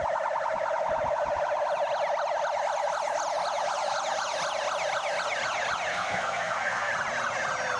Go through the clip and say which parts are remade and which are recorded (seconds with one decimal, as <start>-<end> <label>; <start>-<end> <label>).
0.0-5.9 recorded; 5.9-6.9 remade; 6.9-7.8 recorded